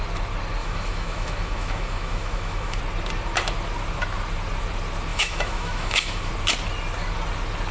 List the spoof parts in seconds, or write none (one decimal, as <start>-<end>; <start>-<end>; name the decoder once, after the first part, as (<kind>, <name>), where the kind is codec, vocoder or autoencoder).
0.6-2.8 (autoencoder, DAC-VAE); 5.1-6.3